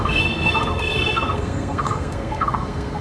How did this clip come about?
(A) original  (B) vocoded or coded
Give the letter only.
B